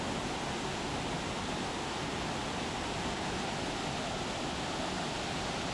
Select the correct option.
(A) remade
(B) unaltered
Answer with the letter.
B